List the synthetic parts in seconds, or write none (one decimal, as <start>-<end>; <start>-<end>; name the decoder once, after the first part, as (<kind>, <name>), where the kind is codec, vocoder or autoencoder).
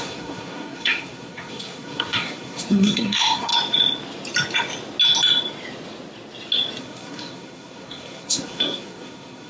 0.0-3.5 (codec, SNAC); 6.8-9.5